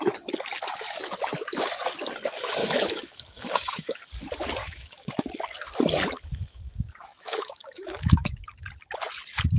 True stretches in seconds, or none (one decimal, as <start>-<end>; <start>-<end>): 0.0-2.6; 4.0-4.6; 5.1-7.1; 8.4-9.6